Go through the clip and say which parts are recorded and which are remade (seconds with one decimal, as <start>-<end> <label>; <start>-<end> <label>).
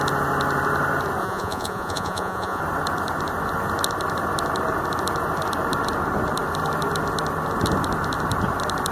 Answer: 0.0-1.2 recorded; 1.2-2.6 remade; 2.6-8.9 recorded